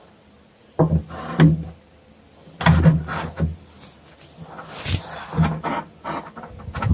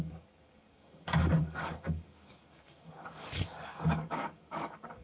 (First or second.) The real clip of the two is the first